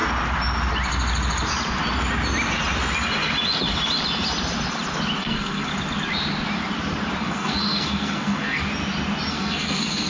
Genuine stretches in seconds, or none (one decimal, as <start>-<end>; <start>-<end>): 0.0-5.2; 5.7-7.2; 8.6-9.3